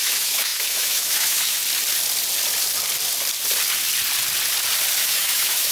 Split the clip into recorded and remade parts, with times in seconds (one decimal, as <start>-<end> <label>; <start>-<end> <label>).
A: 0.0-1.6 remade; 1.6-5.0 recorded; 5.0-5.7 remade